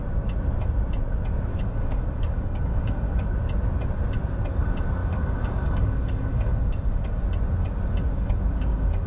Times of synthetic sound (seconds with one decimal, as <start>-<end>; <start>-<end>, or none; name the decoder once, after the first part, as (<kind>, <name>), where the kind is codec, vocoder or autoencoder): 1.5-3.3 (codec, DAC); 5.0-7.2; 8.1-9.1